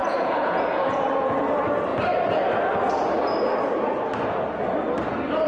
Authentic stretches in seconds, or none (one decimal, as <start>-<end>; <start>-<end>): 1.4-5.5